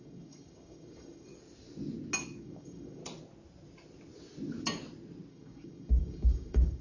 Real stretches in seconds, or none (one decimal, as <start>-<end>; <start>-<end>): 1.3-2.4; 3.0-5.3